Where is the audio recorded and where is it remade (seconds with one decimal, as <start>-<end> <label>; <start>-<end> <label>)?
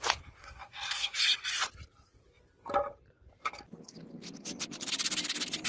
0.0-0.4 recorded; 0.4-1.2 remade; 1.2-5.7 recorded